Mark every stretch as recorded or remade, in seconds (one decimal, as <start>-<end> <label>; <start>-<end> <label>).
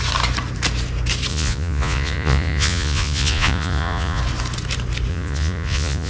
0.0-1.3 recorded; 1.3-4.2 remade; 4.2-5.1 recorded; 5.1-6.1 remade